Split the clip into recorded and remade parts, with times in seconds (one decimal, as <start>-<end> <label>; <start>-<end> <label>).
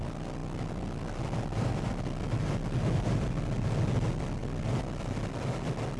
0.0-6.0 recorded